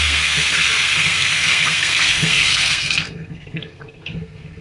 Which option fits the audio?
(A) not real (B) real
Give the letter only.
A